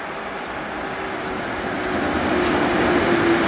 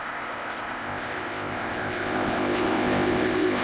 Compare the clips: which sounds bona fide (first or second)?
first